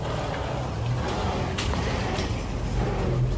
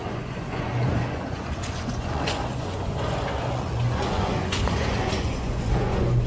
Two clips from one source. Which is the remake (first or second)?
second